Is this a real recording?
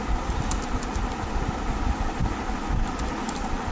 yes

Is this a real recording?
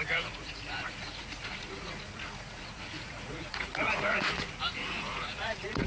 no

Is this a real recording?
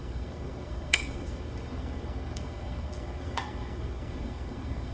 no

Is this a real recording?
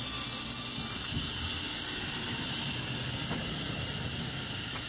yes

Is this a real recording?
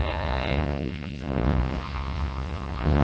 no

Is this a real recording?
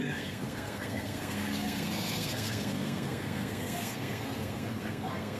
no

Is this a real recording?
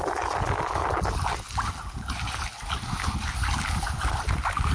yes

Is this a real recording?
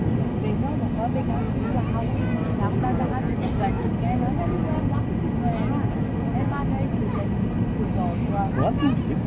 yes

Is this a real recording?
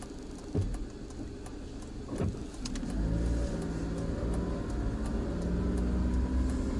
yes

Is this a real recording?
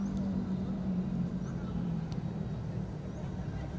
yes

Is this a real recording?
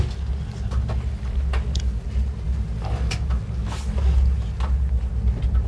yes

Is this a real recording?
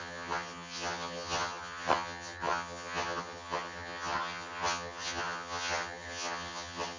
no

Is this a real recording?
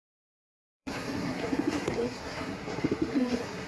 no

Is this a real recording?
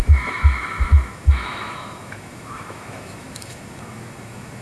no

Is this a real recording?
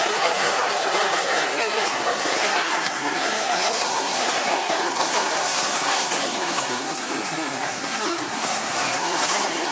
no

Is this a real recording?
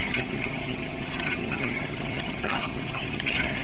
no